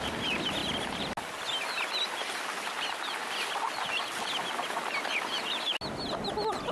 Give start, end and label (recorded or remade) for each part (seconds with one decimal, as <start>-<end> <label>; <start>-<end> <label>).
0.0-0.6 recorded; 0.6-1.1 remade; 1.1-3.2 recorded; 3.2-5.7 remade; 5.7-6.7 recorded